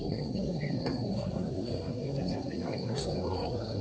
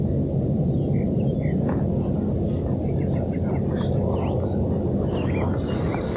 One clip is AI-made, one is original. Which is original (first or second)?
second